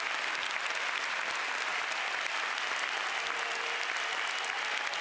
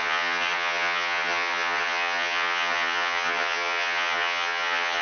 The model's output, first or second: second